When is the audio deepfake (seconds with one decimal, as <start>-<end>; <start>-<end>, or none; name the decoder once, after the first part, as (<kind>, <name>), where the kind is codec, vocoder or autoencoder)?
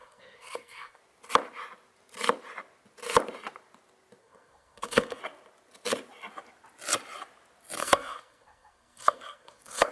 0.0-1.0 (codec, SNAC); 4.2-5.2; 7.8-9.9